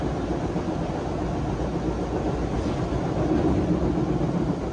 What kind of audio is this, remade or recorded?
recorded